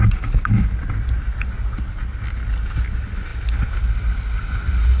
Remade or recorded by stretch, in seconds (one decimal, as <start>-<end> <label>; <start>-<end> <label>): 0.0-5.0 recorded